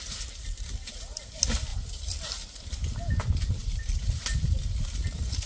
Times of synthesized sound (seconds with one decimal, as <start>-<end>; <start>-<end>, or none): none